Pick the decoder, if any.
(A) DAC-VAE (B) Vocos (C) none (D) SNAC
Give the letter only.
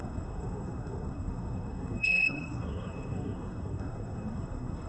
D